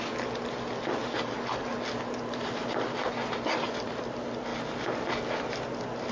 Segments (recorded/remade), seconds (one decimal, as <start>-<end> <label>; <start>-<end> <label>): 0.0-6.1 recorded